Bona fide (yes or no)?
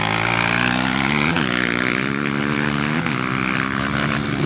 yes